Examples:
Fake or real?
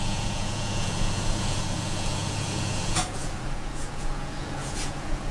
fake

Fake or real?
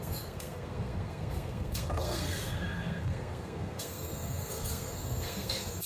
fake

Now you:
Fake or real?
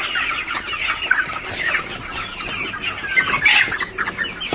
real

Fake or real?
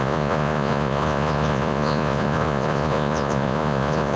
fake